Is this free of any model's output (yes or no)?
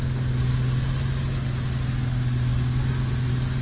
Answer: yes